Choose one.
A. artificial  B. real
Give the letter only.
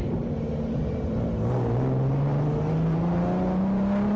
B